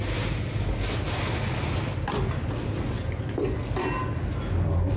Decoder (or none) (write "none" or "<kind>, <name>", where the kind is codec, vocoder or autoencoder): none